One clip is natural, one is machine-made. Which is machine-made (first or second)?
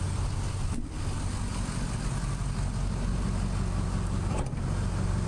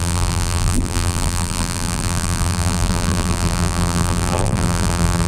second